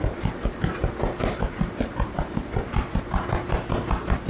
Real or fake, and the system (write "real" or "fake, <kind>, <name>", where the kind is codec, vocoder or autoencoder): real